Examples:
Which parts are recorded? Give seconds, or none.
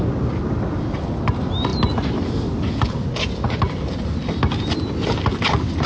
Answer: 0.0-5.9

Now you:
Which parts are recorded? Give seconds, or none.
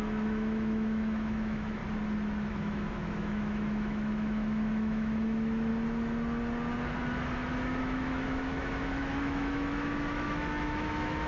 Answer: 1.8-2.5; 5.7-7.8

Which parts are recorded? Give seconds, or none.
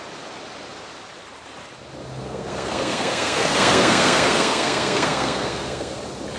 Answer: 0.0-2.2; 6.0-6.4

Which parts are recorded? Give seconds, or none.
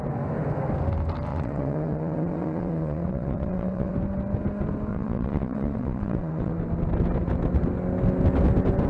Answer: 0.0-1.3; 3.9-4.9; 6.5-8.9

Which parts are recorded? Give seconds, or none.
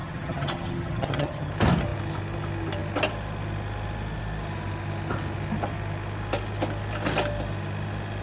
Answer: 1.5-8.2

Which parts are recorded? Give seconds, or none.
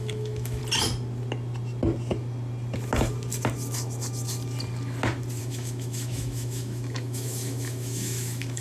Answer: 0.6-5.4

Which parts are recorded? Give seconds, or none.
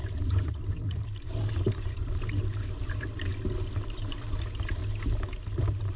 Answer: 3.3-4.1; 4.8-5.6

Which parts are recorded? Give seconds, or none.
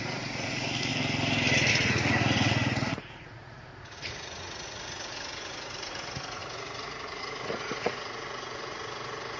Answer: 0.9-1.7